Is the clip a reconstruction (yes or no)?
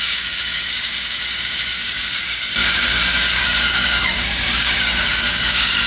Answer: yes